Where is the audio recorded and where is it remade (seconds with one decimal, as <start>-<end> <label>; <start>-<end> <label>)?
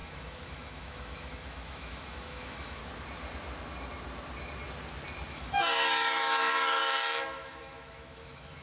0.0-2.8 remade; 2.8-5.3 recorded; 5.3-8.6 remade